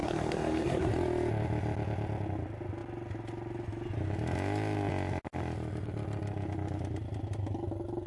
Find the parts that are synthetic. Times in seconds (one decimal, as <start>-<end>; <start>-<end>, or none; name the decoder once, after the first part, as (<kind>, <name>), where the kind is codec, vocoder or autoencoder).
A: 0.0-0.9 (codec, SNAC)